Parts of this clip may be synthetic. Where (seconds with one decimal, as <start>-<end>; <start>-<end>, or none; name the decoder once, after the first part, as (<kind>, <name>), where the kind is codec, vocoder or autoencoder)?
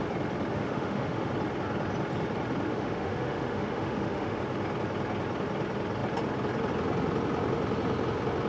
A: 0.5-1.3 (autoencoder, DAC-VAE); 2.7-4.4